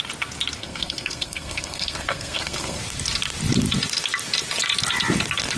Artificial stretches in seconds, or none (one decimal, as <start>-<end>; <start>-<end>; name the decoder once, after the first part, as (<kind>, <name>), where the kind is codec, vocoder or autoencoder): 0.6-2.8 (codec, SNAC)